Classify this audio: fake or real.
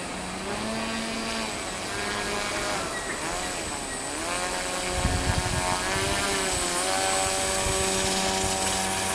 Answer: real